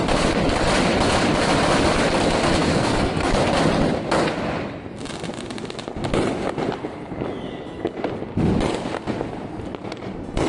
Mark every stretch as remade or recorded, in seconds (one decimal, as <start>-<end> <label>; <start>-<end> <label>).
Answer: 0.0-2.6 recorded; 2.6-3.3 remade; 3.3-10.5 recorded